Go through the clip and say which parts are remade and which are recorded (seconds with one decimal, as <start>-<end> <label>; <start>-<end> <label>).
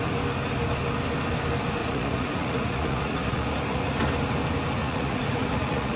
0.0-1.8 recorded; 1.8-3.9 remade; 3.9-4.8 recorded; 4.8-6.0 remade